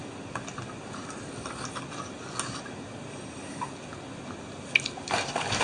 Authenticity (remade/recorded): recorded